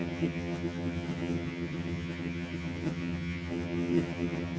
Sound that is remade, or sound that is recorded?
remade